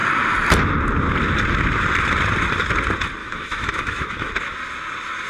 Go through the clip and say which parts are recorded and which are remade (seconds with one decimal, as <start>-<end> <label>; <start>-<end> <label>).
0.0-3.2 recorded; 3.2-4.3 remade; 4.3-5.3 recorded